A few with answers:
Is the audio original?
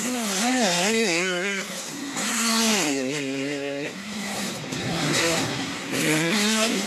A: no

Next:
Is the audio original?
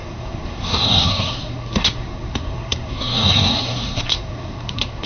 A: no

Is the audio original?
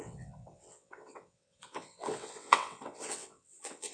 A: no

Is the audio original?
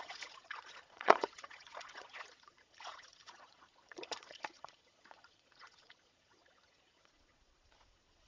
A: no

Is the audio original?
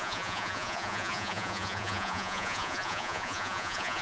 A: no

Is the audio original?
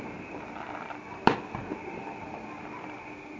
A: no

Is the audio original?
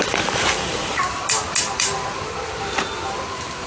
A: no